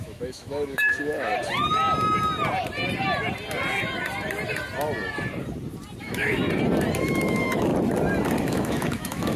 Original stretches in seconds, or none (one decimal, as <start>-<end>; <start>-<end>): 1.3-6.0; 6.4-7.0; 7.7-8.4